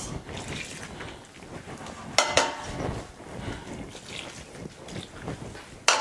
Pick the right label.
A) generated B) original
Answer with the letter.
B